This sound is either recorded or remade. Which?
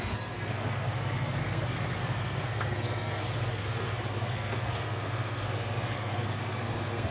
remade